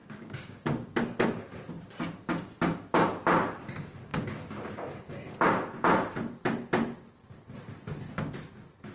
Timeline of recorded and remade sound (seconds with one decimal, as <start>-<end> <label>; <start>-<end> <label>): 0.0-1.0 remade; 1.0-8.9 recorded

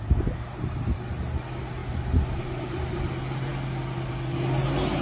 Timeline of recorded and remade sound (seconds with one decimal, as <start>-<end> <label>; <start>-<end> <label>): 0.0-5.0 recorded